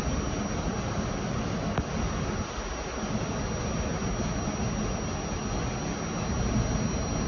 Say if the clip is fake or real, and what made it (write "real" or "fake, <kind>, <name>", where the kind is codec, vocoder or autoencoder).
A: real